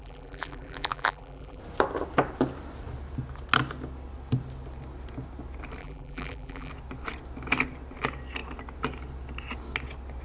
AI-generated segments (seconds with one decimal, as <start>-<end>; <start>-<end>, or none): 0.0-1.6; 5.8-6.7